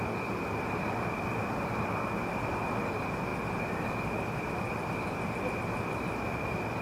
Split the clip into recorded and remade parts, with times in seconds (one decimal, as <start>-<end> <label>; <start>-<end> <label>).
0.0-6.8 recorded